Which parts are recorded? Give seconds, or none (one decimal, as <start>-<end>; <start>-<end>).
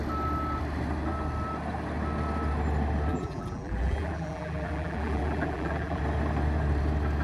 0.0-3.1; 6.0-7.2